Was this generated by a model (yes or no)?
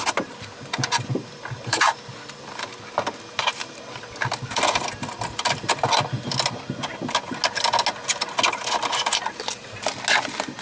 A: no